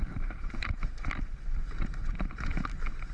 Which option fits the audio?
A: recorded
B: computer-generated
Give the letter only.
B